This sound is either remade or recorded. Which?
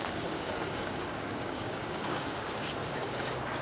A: remade